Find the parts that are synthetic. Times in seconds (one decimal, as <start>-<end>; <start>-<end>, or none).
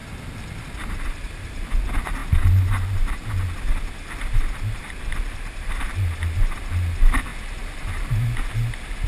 none